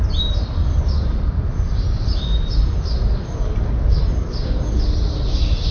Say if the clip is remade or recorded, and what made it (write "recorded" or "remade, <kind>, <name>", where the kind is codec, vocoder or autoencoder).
recorded